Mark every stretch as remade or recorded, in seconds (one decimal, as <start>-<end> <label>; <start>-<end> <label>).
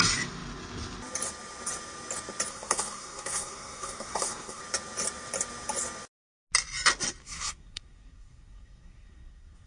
0.0-2.5 recorded; 2.5-4.6 remade; 4.6-7.2 recorded; 7.2-9.7 remade